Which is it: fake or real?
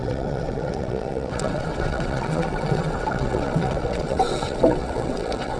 fake